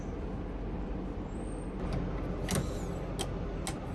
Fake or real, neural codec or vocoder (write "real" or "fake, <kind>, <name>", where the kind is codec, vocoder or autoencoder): real